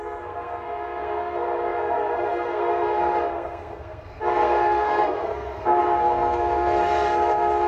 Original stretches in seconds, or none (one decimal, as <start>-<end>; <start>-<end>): none